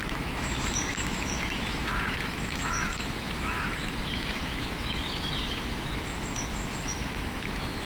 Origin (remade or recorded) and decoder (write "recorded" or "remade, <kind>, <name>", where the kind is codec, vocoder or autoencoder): remade, autoencoder, DAC-VAE